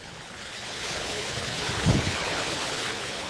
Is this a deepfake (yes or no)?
yes